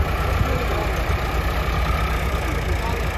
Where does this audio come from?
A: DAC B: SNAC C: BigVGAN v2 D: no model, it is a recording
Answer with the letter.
D